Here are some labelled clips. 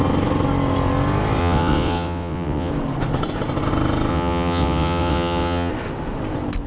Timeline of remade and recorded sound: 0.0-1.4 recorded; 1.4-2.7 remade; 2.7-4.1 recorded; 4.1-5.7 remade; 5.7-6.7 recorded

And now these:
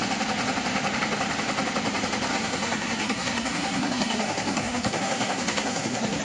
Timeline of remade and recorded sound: 0.0-2.3 recorded; 2.3-6.2 remade

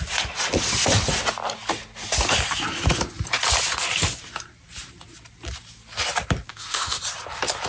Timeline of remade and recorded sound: 0.0-6.5 recorded; 6.5-7.0 remade; 7.0-7.7 recorded

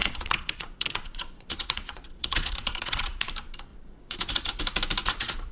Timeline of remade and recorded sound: 0.0-3.3 remade; 3.3-3.7 recorded; 3.7-4.6 remade; 4.6-5.0 recorded; 5.0-5.5 remade